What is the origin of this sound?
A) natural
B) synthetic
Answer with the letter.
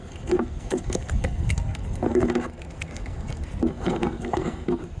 B